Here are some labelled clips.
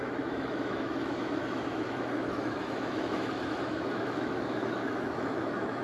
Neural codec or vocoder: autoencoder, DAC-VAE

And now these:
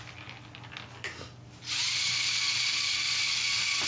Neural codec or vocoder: none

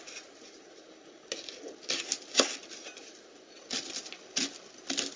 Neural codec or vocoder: none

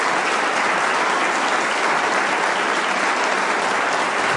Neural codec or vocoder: none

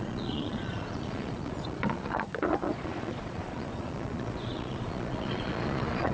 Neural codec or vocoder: vocoder, Vocos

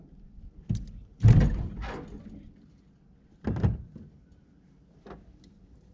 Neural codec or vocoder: none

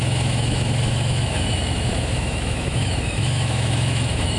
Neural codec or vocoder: autoencoder, DAC-VAE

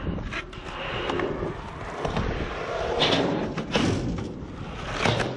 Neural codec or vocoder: none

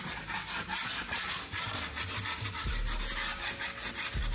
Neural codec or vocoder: none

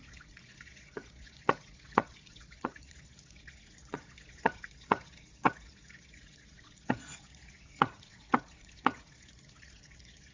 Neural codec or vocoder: vocoder, Vocos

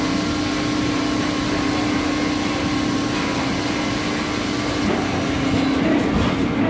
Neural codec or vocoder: none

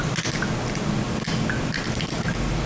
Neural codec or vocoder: none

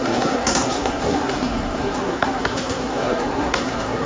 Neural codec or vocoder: codec, SNAC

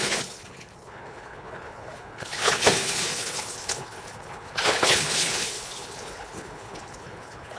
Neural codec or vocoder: codec, HILCodec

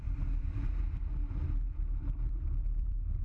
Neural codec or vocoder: vocoder, BigVGAN v2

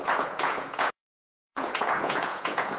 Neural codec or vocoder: vocoder, Vocos